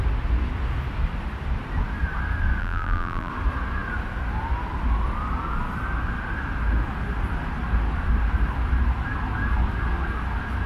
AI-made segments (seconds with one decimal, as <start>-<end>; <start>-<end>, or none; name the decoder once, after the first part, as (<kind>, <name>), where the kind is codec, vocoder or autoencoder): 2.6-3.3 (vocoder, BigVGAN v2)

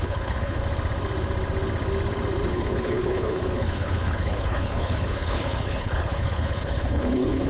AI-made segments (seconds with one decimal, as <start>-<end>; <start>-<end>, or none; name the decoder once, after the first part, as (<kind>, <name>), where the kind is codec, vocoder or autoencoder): 0.0-0.6 (codec, HILCodec); 2.5-7.5

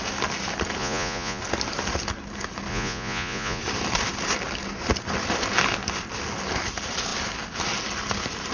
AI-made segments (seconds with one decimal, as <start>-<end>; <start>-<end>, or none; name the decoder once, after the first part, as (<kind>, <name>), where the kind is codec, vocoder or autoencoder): 0.8-1.4 (vocoder, Vocos); 2.7-3.6

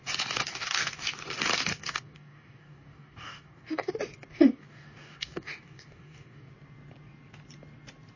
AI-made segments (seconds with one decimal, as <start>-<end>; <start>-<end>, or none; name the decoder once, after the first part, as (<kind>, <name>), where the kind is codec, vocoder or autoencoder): 0.5-1.0 (codec, DAC); 1.7-3.9; 4.3-6.5

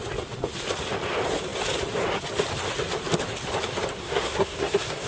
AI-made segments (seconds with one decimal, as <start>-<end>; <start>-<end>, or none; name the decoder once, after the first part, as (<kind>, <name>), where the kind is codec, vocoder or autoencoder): 4.0-5.1 (codec, SNAC)

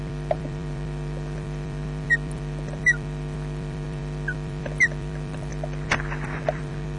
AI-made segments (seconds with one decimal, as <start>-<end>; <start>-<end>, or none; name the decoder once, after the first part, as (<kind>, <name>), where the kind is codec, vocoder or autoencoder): 0.0-7.0 (vocoder, BigVGAN v2)

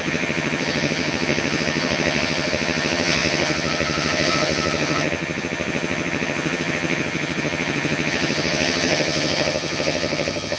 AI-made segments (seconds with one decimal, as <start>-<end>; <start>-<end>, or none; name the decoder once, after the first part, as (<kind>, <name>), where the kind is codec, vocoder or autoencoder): 0.0-10.6 (vocoder, HiFi-GAN)